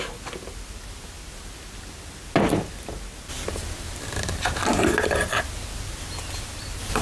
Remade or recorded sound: recorded